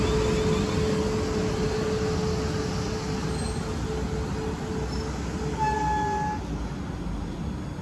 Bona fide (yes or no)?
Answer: yes